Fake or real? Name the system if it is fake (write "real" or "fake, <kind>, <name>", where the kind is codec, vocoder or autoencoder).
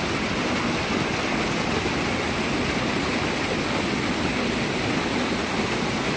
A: real